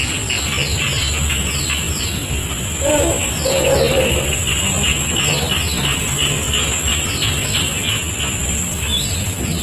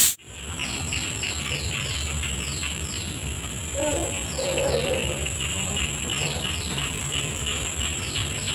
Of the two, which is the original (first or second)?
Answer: first